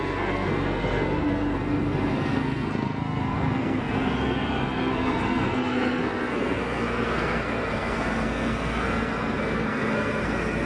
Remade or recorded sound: remade